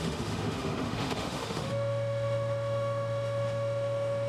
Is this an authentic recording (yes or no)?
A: no